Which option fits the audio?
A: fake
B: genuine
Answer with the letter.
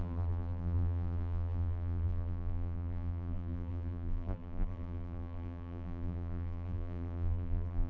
A